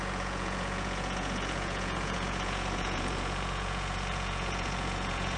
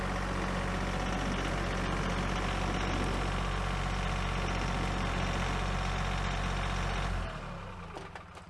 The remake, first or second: first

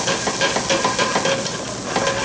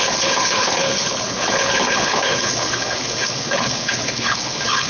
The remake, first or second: second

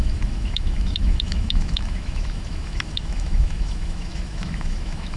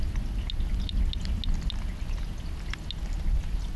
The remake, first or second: first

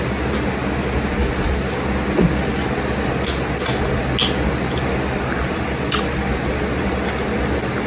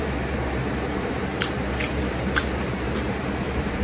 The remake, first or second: second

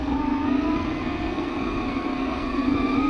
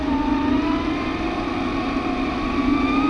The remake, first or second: first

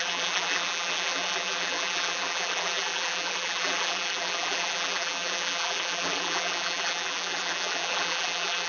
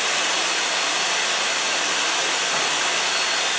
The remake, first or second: first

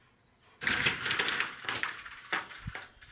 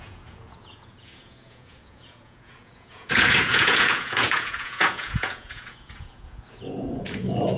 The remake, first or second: second